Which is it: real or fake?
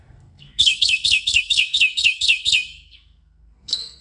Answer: fake